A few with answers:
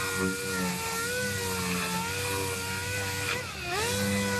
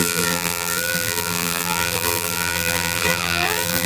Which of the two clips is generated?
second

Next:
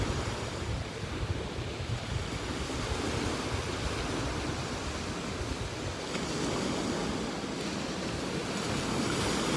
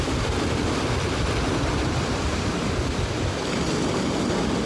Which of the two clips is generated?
second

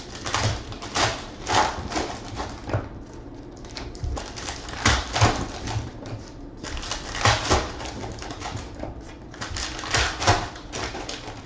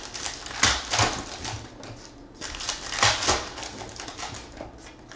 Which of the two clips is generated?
first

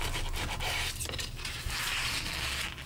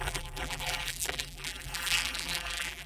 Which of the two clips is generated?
second